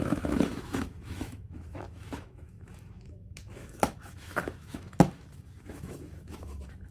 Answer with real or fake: fake